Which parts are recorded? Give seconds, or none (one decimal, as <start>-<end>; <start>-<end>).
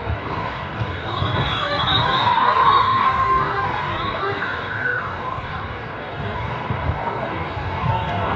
none